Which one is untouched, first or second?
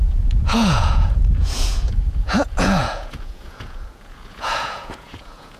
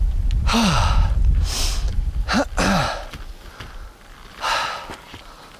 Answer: second